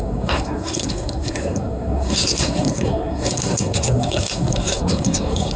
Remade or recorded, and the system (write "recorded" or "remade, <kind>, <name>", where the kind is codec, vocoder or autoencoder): remade, codec, SNAC